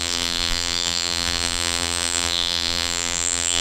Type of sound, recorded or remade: remade